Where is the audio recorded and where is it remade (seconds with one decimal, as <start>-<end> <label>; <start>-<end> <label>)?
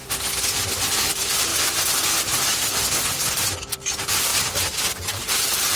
0.0-1.0 recorded; 1.0-1.5 remade; 1.5-3.3 recorded; 3.3-5.8 remade